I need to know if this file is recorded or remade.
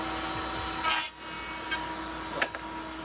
recorded